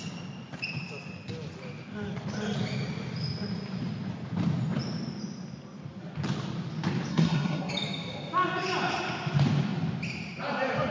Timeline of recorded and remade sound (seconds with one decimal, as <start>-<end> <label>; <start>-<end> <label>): 0.0-7.1 recorded; 7.1-7.7 remade; 7.7-10.9 recorded

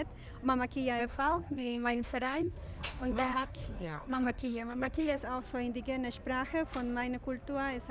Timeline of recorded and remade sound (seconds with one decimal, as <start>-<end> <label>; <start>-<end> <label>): 0.0-1.0 recorded; 1.0-5.2 remade; 5.2-7.9 recorded

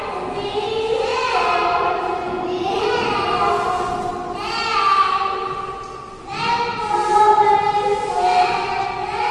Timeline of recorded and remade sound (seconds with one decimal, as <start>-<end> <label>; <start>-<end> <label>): 0.0-9.3 recorded

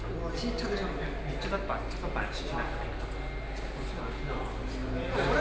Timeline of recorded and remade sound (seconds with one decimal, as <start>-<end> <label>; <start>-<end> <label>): 0.0-5.4 recorded

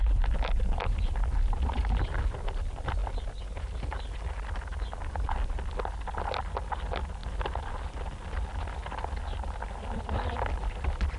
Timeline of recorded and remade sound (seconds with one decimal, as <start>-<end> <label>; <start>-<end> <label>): 0.0-11.2 recorded

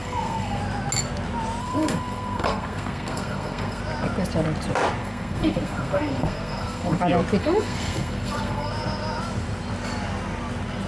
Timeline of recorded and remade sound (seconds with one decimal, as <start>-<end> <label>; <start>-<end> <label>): 0.0-0.6 remade; 0.6-1.6 recorded; 1.6-3.8 remade; 3.8-5.0 recorded; 5.0-7.0 remade; 7.0-7.4 recorded; 7.4-8.7 remade; 8.7-10.9 recorded

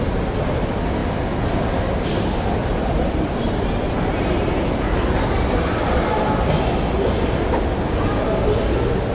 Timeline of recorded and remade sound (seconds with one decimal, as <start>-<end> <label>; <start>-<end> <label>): 0.0-9.1 recorded